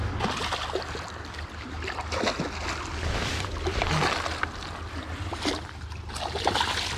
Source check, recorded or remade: recorded